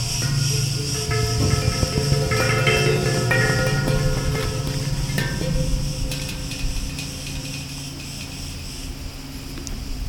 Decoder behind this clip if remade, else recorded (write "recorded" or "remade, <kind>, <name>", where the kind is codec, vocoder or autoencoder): recorded